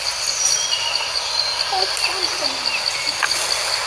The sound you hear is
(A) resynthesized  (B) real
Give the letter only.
B